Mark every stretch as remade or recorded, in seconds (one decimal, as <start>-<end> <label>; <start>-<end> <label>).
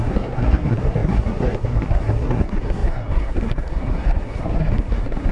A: 0.0-5.3 remade